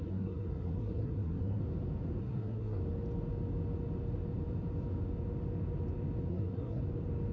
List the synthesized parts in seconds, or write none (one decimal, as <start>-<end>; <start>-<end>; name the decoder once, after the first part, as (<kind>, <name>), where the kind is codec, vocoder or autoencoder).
0.0-1.6 (codec, SNAC); 2.2-2.8; 6.3-6.8